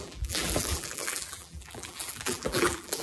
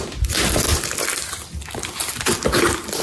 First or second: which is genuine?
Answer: second